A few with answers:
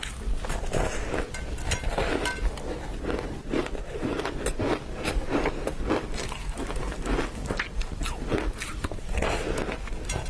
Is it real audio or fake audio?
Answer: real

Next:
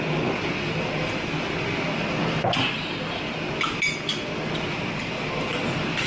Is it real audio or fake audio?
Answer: real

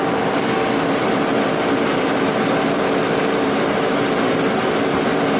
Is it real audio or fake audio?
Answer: fake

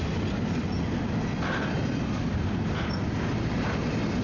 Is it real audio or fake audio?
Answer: real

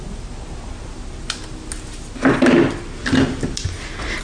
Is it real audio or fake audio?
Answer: real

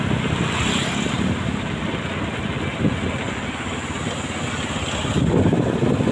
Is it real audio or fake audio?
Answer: real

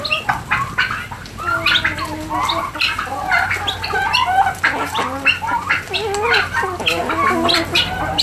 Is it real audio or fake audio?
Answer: real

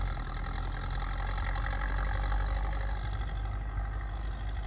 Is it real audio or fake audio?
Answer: real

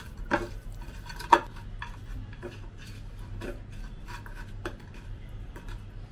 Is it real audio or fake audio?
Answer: fake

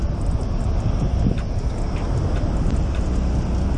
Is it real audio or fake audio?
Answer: real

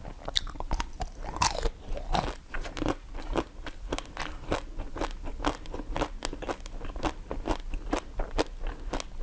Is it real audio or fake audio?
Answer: real